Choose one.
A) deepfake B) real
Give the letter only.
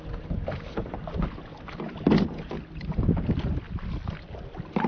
B